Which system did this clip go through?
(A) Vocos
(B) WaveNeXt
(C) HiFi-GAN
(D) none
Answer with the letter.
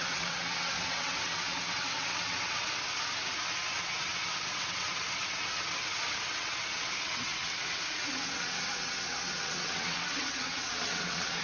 B